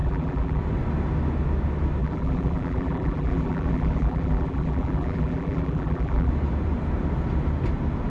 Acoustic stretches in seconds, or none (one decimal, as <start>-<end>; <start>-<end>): 0.6-2.0; 6.3-8.1